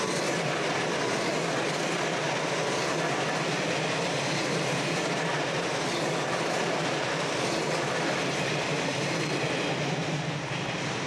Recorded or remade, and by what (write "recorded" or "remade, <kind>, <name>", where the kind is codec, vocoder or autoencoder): recorded